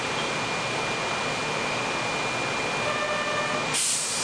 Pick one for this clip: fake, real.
real